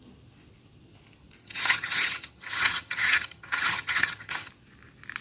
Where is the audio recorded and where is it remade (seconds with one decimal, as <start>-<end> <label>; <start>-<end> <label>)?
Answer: 0.0-1.4 recorded; 1.4-4.5 remade; 4.5-5.2 recorded